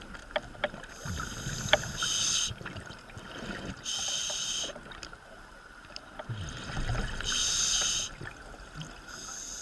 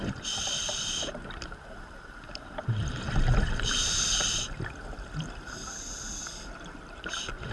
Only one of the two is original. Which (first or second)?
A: first